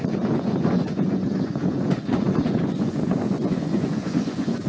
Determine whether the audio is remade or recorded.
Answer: remade